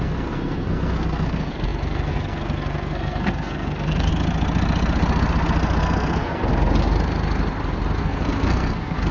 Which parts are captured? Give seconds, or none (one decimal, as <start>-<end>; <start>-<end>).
4.1-5.8; 6.5-8.0